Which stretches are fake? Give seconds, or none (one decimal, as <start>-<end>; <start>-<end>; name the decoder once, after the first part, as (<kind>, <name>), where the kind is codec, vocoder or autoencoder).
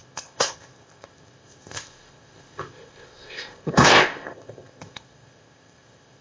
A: 0.0-6.2 (codec, ZipCodec)